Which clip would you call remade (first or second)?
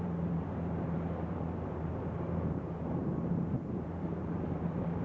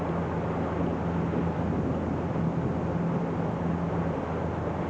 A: first